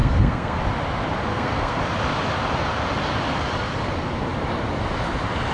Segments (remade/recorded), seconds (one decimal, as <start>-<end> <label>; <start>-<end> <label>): 0.0-0.6 remade; 0.6-1.3 recorded; 1.3-1.8 remade; 1.8-5.5 recorded